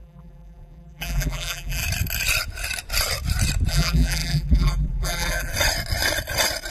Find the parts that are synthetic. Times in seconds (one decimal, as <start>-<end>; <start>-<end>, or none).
0.0-1.8; 3.7-5.5